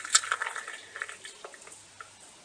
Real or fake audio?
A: real